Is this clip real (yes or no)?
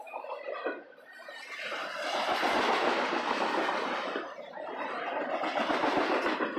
no